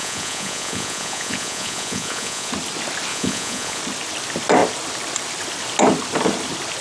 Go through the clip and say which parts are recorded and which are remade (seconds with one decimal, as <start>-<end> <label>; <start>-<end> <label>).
0.0-2.5 remade; 2.5-3.1 recorded; 3.1-3.8 remade; 3.8-6.8 recorded